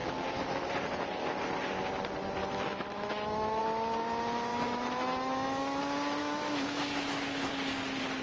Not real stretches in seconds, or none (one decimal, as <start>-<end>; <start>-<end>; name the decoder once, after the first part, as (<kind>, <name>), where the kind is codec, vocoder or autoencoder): 0.0-0.7 (autoencoder, DAC-VAE); 2.4-3.6; 4.5-5.8; 6.2-7.5